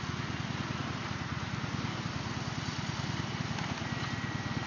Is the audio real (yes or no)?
yes